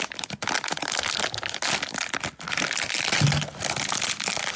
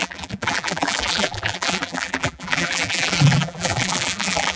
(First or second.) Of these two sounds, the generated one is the second